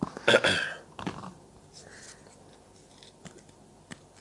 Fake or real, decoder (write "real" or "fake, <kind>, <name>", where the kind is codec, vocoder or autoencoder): real